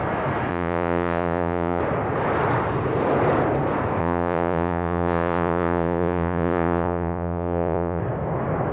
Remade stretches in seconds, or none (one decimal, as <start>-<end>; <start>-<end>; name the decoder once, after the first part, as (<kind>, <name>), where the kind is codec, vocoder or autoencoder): 0.5-1.8 (vocoder, Vocos); 4.0-8.0